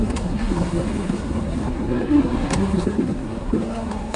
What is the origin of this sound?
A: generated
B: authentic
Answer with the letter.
A